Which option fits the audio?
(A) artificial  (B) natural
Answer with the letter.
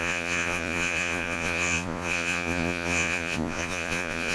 A